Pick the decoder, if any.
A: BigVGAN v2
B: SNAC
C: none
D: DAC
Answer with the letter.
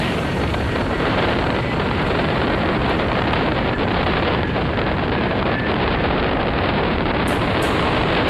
A